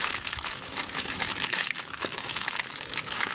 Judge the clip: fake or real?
fake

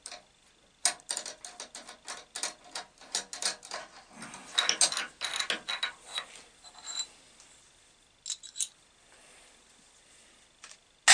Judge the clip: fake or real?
real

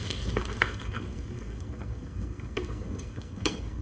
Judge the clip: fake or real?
fake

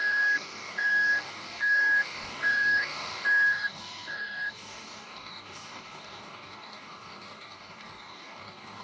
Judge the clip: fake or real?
fake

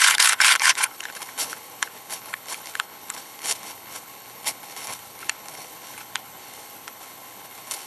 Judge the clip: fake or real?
fake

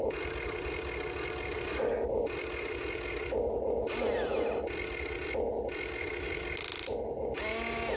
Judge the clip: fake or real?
real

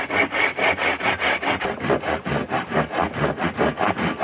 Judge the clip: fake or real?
real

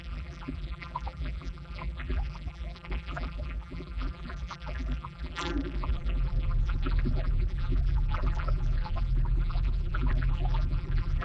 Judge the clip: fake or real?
fake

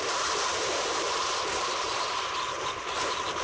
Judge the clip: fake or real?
fake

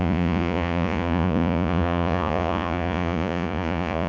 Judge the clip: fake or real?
fake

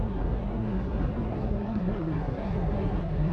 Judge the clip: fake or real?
fake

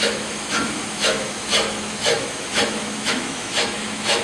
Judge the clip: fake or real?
fake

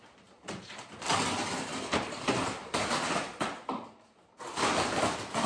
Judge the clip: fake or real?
real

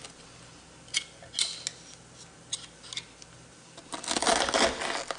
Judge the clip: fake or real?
real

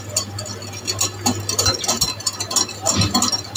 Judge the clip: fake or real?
real